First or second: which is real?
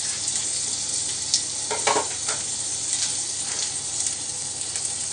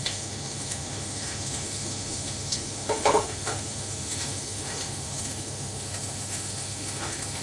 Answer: first